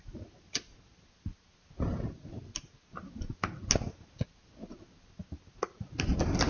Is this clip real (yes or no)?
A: yes